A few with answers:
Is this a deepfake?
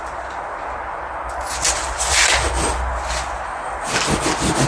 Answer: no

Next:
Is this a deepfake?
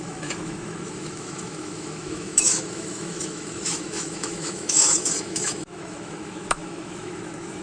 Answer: yes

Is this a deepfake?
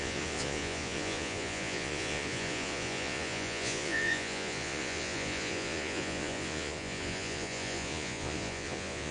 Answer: yes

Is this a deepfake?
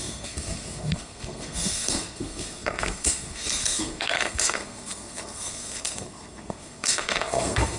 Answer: yes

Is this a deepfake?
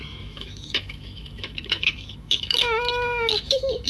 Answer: yes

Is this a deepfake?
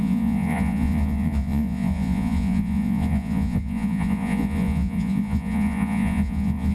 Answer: yes